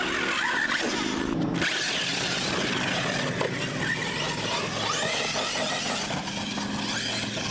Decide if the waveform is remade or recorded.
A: recorded